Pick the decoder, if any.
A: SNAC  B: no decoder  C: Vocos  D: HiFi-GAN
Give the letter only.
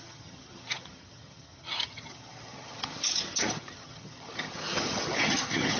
D